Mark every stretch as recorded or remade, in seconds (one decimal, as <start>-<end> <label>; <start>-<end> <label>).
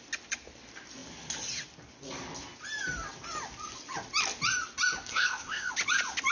0.0-5.1 recorded; 5.1-5.7 remade; 5.7-6.3 recorded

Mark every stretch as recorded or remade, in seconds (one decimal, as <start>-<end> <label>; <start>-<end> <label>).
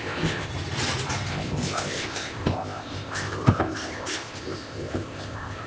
0.0-0.5 remade; 0.5-1.3 recorded; 1.3-5.7 remade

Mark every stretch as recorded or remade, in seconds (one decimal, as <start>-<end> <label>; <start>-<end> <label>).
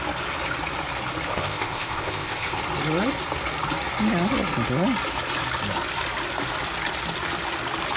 0.0-1.3 recorded; 1.3-2.6 remade; 2.6-8.0 recorded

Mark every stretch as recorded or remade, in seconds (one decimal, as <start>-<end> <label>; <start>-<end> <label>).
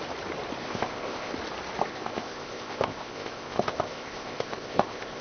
0.0-0.6 recorded; 0.6-1.3 remade; 1.3-1.9 recorded; 1.9-5.2 remade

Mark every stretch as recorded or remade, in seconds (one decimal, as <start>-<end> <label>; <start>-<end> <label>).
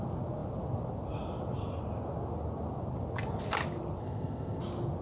0.0-4.0 recorded; 4.0-4.6 remade; 4.6-5.0 recorded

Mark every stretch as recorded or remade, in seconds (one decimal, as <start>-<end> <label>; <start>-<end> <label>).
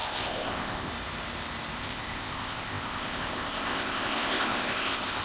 0.0-0.9 remade; 0.9-1.8 recorded; 1.8-5.2 remade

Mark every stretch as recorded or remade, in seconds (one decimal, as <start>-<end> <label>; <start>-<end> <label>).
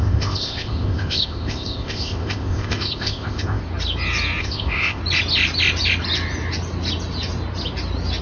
0.0-3.6 remade; 3.6-4.4 recorded; 4.4-5.0 remade; 5.0-8.2 recorded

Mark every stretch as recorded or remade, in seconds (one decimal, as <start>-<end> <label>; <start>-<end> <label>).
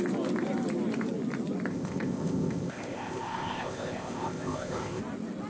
0.0-1.7 recorded; 1.7-5.0 remade; 5.0-5.5 recorded